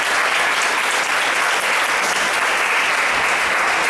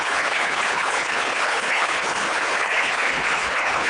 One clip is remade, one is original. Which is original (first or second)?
first